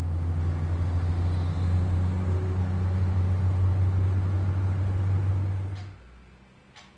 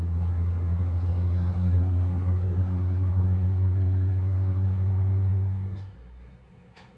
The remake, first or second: second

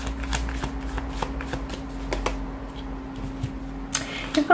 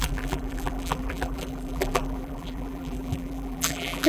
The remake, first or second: second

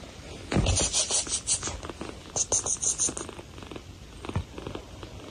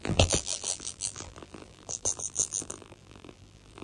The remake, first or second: second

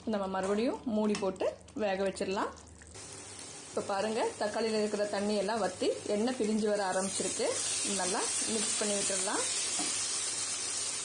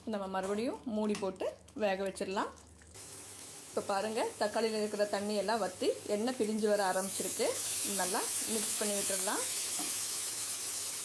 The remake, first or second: second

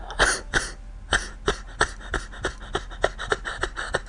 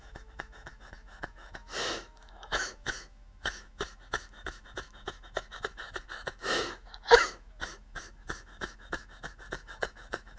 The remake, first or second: second